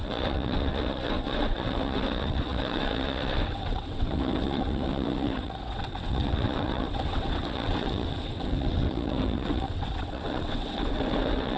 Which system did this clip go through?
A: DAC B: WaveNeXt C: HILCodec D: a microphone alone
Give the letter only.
B